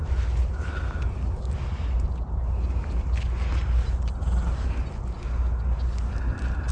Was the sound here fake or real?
real